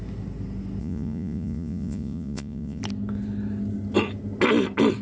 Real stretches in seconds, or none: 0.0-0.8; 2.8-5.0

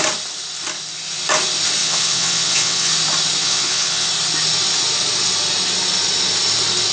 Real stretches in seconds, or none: 0.0-1.8; 2.9-3.4; 4.1-6.9

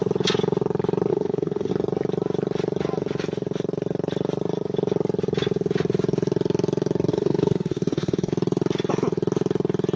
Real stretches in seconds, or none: 0.0-1.1; 1.7-7.1; 8.3-10.0

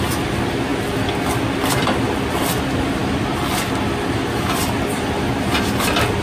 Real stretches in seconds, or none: 0.0-6.2

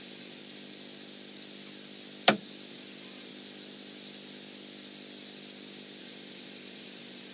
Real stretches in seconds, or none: 0.4-2.7; 3.3-6.0